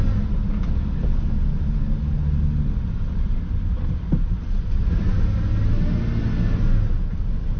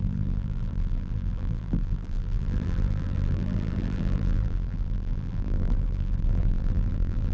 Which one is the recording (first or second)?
first